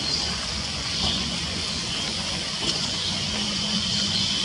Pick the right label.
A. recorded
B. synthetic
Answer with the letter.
B